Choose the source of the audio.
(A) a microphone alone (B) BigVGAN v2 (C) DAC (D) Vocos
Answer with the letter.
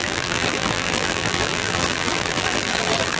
B